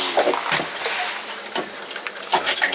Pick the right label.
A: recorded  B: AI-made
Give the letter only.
A